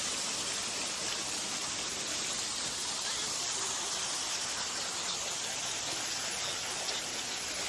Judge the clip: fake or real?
real